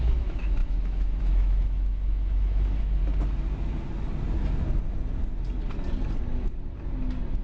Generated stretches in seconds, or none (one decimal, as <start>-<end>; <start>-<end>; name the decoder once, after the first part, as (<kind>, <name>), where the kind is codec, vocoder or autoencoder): 0.0-3.0 (autoencoder, DAC-VAE)